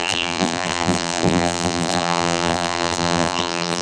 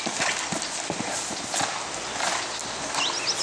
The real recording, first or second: second